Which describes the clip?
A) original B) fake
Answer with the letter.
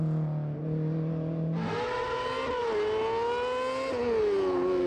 A